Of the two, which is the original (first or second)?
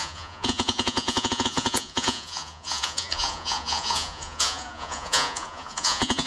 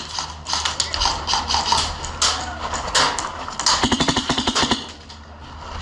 second